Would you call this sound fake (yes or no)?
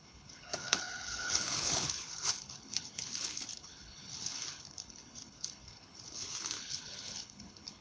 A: yes